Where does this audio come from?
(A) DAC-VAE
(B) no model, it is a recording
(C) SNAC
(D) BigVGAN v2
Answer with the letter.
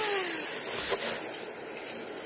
B